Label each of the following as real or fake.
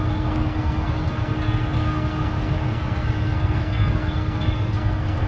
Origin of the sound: fake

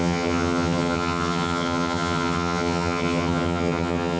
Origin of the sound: fake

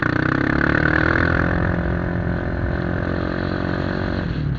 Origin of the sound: real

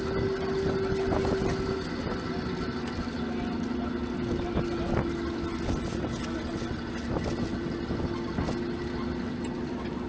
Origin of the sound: real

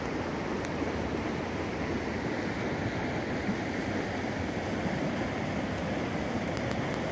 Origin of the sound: real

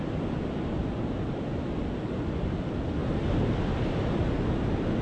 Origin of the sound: real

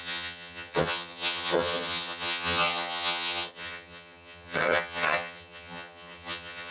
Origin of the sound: fake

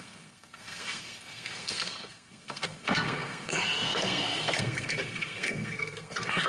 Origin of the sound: fake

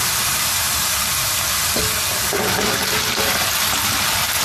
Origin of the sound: real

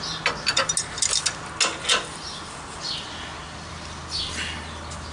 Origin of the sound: real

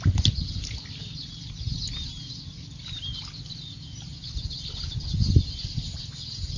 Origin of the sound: real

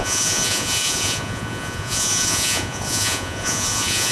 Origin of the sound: fake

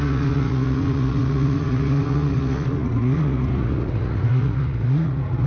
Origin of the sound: fake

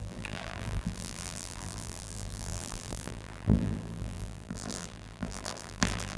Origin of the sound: fake